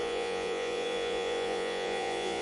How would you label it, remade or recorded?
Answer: remade